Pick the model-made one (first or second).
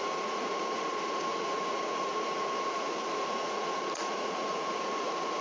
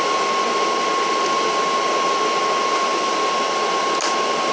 first